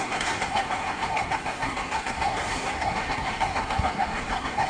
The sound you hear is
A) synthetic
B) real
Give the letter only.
A